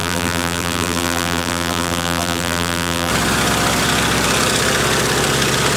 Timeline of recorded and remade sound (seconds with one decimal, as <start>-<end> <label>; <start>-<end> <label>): 0.0-3.1 remade; 3.1-5.8 recorded